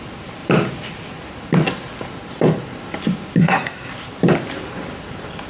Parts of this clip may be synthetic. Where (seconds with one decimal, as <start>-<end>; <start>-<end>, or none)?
3.4-3.9